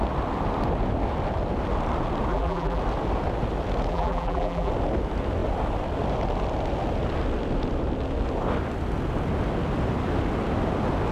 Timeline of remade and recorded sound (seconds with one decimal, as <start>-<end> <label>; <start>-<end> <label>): 0.0-2.3 recorded; 2.3-2.8 remade; 2.8-3.9 recorded; 3.9-4.7 remade; 4.7-11.1 recorded